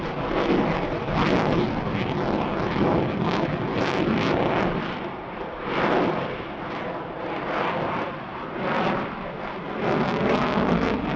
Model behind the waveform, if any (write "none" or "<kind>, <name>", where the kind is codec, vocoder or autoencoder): none